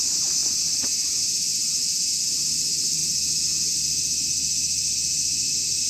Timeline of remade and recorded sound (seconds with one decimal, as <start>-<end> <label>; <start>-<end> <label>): 0.0-5.9 recorded